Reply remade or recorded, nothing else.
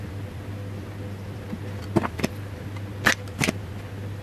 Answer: recorded